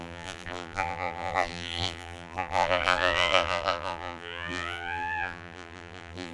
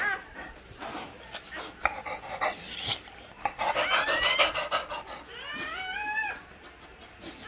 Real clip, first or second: second